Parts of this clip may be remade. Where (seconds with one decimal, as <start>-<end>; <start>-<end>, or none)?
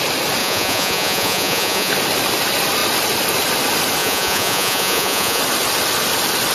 0.4-1.9; 4.0-5.4